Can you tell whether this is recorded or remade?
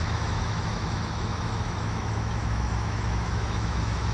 remade